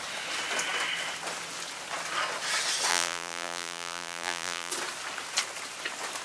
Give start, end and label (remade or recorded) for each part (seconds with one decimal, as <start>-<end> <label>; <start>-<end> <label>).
0.0-2.9 recorded; 2.9-4.7 remade; 4.7-6.2 recorded